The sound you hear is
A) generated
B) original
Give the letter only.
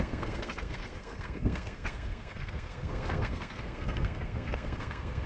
A